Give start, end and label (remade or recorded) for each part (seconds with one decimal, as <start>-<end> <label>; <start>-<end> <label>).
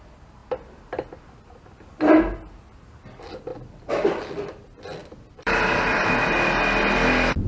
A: 0.0-3.5 recorded; 3.5-4.6 remade; 4.6-5.0 recorded; 5.0-6.6 remade; 6.6-7.5 recorded